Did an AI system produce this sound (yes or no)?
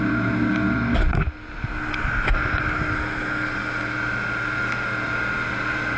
no